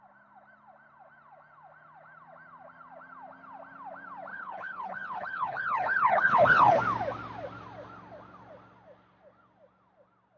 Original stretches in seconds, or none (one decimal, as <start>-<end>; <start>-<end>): 0.0-4.3; 6.8-10.4